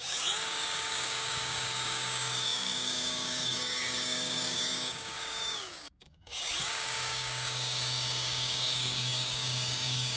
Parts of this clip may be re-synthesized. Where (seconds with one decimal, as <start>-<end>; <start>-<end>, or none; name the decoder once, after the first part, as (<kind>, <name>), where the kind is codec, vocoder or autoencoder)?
0.0-10.2 (codec, DAC)